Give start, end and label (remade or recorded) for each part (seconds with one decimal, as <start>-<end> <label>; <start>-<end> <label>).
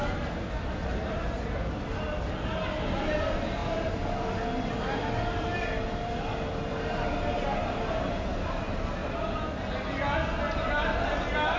0.0-11.6 recorded